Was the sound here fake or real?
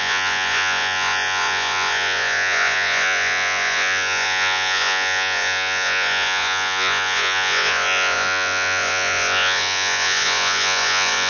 fake